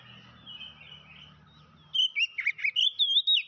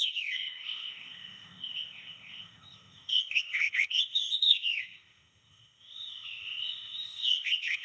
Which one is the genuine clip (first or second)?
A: first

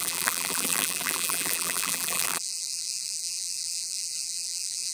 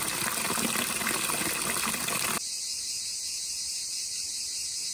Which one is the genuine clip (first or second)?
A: second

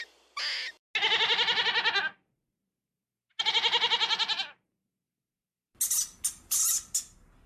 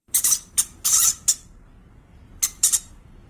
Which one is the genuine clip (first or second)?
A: first